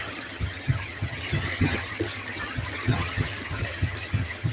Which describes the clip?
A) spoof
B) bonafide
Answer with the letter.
A